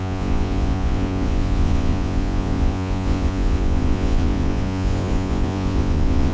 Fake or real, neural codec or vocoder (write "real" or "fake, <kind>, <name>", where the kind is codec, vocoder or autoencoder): fake, vocoder, Vocos